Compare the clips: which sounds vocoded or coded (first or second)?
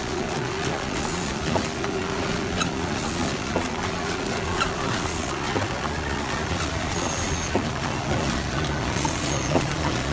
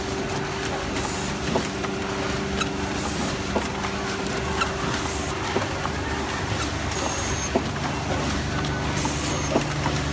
first